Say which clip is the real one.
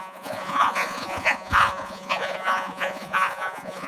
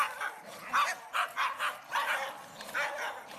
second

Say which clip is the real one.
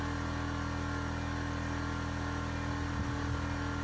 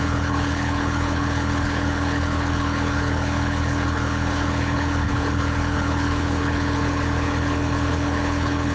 first